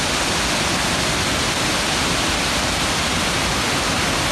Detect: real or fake real